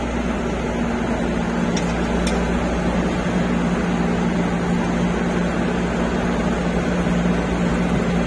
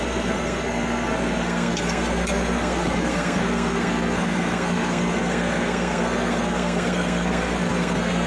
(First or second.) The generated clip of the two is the second